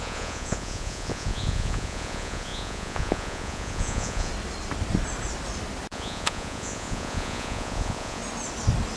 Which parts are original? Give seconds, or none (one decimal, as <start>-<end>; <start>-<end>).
4.3-5.9; 8.2-9.0